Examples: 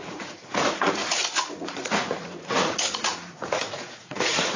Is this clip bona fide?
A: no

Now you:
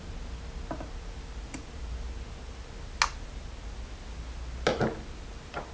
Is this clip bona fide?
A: yes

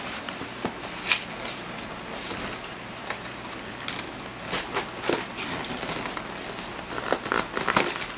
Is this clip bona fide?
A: yes